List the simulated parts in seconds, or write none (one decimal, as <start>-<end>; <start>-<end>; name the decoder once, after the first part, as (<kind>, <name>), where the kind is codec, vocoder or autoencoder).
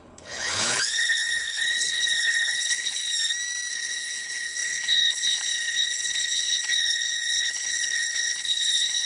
0.0-3.0 (codec, HILCodec); 3.7-9.1